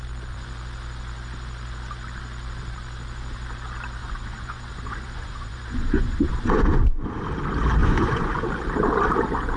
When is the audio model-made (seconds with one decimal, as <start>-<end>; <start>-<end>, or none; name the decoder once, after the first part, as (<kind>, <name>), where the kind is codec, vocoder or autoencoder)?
4.0-7.1 (vocoder, Vocos); 7.8-8.5